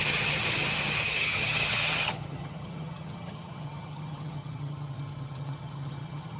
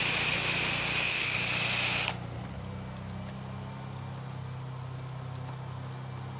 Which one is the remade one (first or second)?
first